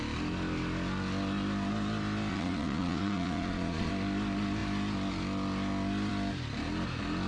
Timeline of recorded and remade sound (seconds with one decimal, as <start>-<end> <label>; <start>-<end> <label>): 0.0-2.3 recorded; 2.3-3.9 remade; 3.9-7.3 recorded